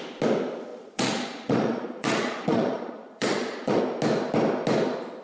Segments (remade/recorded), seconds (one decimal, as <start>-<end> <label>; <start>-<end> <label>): 0.0-0.7 recorded; 0.7-3.8 remade; 3.8-5.2 recorded